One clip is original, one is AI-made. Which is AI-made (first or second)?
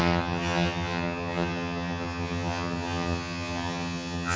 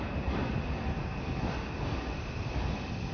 first